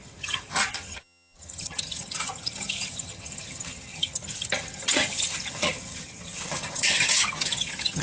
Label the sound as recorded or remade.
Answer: remade